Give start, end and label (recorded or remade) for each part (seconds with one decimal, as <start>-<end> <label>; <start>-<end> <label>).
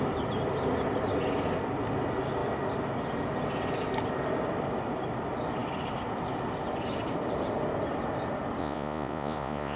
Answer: 0.0-8.6 recorded; 8.6-9.8 remade